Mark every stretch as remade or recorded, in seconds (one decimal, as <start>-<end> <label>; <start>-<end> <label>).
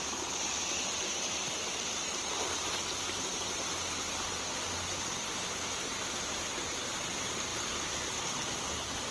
0.0-2.1 remade; 2.1-4.9 recorded; 4.9-9.1 remade